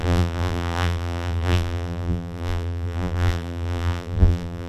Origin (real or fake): fake